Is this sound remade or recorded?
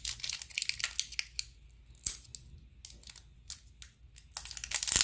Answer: recorded